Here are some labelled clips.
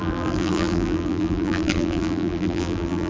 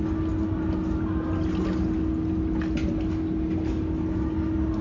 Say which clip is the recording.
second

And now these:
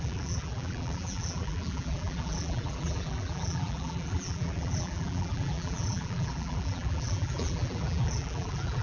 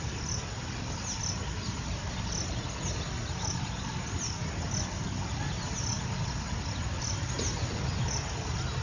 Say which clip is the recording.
second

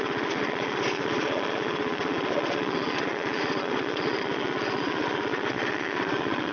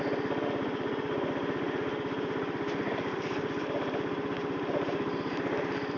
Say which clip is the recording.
second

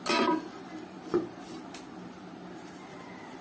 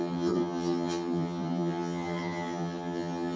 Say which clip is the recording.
first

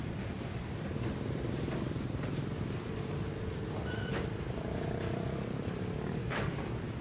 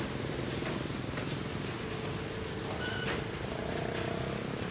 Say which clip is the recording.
second